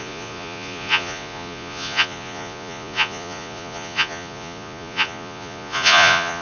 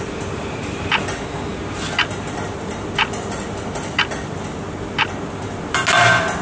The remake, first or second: first